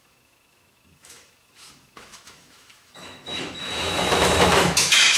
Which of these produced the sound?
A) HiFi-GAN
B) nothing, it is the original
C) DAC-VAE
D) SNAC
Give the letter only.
C